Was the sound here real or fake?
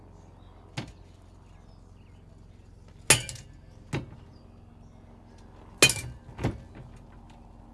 real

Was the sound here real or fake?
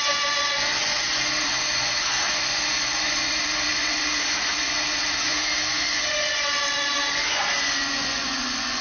fake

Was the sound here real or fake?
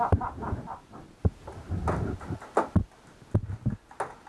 real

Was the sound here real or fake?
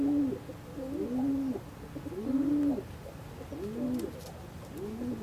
real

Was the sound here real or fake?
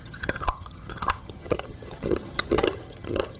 fake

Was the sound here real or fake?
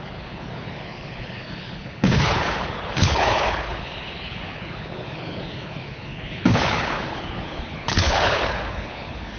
fake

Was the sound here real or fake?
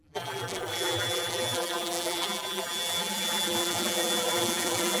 fake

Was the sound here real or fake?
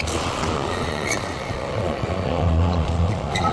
fake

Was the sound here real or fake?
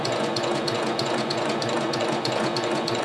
fake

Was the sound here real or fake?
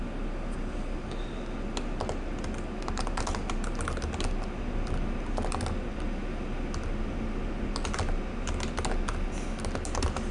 real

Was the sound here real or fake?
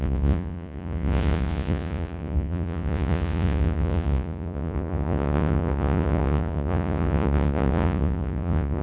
fake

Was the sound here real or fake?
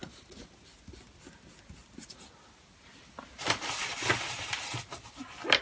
real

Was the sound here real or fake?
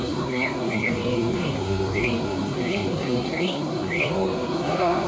fake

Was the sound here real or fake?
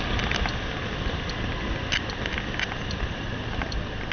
real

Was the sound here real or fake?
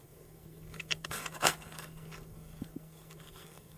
fake